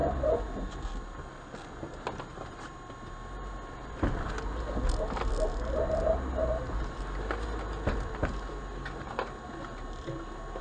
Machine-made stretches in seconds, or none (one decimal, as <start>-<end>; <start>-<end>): none